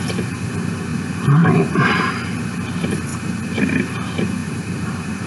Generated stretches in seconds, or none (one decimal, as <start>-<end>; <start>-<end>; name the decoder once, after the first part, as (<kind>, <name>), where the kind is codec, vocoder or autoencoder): 0.9-2.1 (vocoder, BigVGAN v2); 4.4-5.3